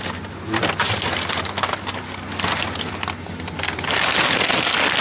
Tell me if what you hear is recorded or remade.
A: recorded